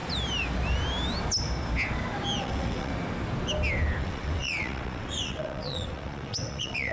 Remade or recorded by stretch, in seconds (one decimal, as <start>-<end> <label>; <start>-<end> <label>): 0.0-2.4 recorded; 2.4-2.9 remade; 2.9-4.0 recorded; 4.0-6.9 remade